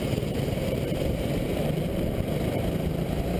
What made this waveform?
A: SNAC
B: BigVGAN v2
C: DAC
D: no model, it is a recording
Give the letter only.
B